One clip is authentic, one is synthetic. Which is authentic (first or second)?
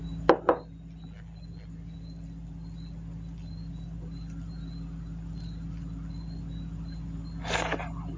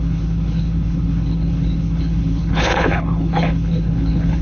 first